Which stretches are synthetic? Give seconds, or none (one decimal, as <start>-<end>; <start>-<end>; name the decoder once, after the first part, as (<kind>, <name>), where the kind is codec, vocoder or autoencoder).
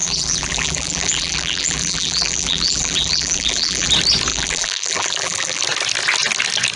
0.0-3.9 (vocoder, BigVGAN v2); 4.3-5.6